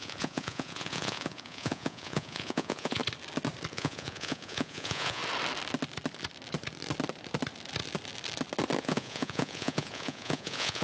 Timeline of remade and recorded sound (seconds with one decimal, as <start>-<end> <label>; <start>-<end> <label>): 0.0-3.0 remade; 3.0-3.7 recorded; 3.7-5.2 remade; 5.2-8.8 recorded; 8.8-10.8 remade